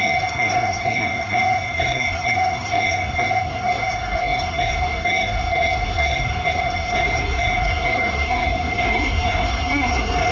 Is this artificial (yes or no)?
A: yes